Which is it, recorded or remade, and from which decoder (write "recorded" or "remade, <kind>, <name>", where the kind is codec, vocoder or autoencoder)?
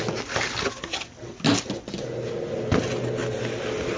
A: recorded